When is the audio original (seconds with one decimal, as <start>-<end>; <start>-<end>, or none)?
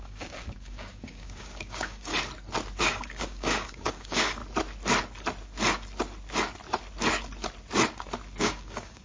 2.1-2.8; 4.4-8.4